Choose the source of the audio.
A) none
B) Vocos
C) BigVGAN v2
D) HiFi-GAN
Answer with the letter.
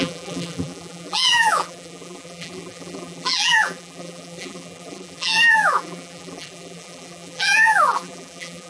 C